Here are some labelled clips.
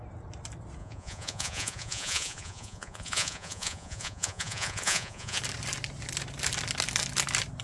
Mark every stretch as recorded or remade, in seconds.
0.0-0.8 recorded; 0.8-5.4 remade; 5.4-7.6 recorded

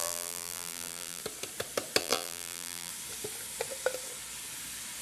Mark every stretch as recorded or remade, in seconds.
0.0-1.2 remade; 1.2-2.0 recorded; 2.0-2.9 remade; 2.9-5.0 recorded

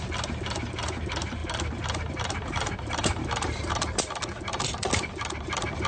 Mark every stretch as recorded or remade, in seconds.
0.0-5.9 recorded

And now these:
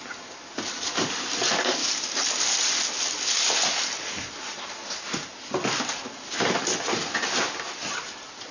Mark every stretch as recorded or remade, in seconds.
0.0-8.5 recorded

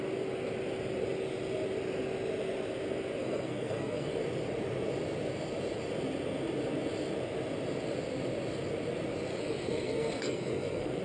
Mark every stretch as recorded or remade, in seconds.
0.0-3.2 recorded; 3.2-4.1 remade; 4.1-9.3 recorded; 9.3-11.0 remade

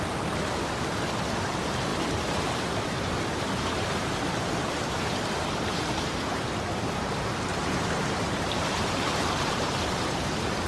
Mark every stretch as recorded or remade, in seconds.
0.0-1.9 recorded; 1.9-6.5 remade; 6.5-7.5 recorded; 7.5-10.7 remade